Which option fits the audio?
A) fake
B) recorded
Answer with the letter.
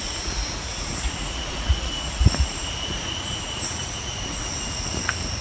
A